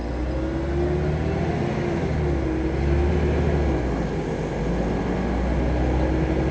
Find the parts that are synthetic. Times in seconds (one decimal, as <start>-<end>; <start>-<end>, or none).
none

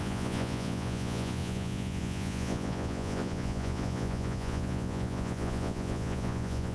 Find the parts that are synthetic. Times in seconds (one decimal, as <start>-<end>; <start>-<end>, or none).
0.0-6.7

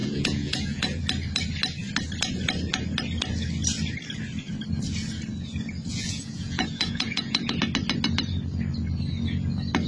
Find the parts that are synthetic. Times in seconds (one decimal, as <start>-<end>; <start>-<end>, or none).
0.0-1.0; 5.9-7.6

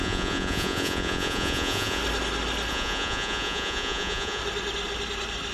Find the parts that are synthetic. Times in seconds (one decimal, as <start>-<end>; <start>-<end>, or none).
0.0-2.0; 2.7-4.4

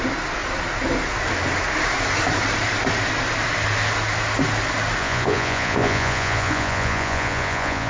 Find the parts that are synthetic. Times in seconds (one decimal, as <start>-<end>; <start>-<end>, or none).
5.0-7.9

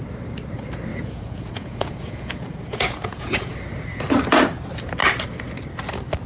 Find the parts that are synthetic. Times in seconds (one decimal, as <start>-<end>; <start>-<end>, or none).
0.9-3.6